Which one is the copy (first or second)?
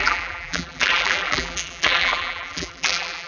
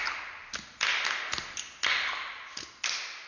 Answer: first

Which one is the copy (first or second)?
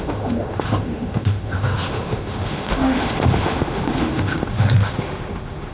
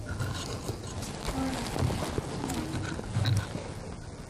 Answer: first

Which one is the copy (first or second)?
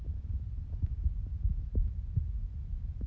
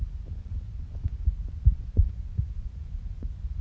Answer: second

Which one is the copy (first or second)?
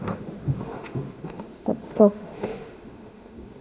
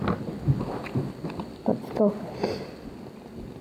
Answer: first